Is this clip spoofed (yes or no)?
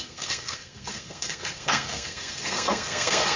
yes